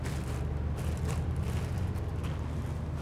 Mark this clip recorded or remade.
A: recorded